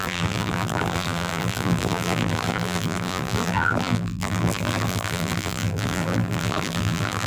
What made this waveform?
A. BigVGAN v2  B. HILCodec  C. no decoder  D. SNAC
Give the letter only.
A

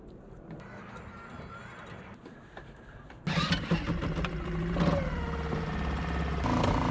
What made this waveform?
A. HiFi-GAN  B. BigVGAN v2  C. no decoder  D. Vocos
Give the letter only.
C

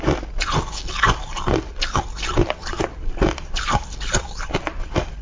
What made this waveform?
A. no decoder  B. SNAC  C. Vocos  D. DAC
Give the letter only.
A